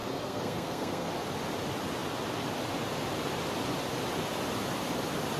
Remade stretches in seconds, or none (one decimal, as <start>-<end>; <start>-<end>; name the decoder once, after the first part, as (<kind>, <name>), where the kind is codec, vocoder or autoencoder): 0.0-1.1 (codec, SNAC)

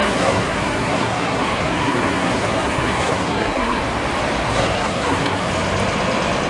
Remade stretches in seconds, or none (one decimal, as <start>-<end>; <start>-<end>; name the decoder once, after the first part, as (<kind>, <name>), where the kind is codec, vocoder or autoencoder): 0.0-3.8 (codec, SNAC); 4.5-5.5

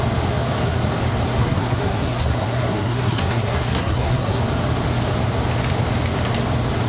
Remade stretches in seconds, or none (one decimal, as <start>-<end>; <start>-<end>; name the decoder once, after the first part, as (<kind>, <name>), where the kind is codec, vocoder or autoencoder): 1.4-4.4 (codec, SNAC)

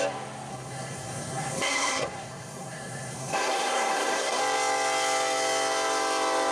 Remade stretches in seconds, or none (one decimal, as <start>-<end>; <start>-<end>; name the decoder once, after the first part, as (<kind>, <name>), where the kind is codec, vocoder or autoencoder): 0.5-4.4 (codec, SNAC)

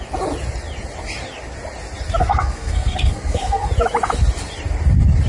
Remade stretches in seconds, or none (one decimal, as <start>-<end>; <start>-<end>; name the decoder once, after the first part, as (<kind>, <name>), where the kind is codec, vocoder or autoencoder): 2.2-3.7 (codec, SNAC)